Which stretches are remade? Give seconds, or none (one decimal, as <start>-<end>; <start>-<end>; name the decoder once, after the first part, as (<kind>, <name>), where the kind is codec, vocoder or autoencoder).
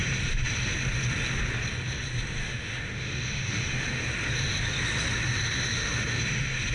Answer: 2.4-4.0 (autoencoder, DAC-VAE); 5.7-6.2